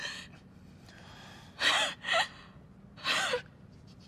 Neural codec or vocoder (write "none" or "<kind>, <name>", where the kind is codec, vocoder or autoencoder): none